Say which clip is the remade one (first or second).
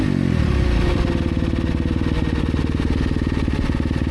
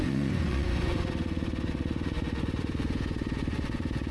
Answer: second